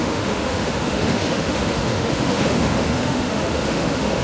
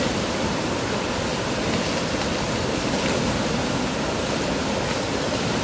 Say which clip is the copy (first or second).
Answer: first